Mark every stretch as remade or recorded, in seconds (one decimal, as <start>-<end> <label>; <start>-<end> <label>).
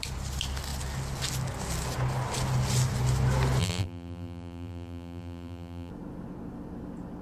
0.0-3.6 recorded; 3.6-5.9 remade; 5.9-7.2 recorded